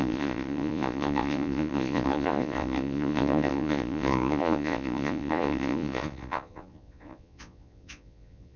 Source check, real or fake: fake